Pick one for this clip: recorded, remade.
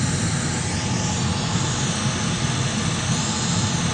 recorded